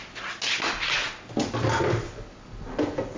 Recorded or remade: recorded